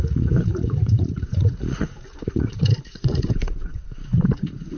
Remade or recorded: remade